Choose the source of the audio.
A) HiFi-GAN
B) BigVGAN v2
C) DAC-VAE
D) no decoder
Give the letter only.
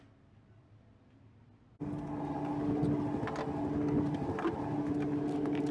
D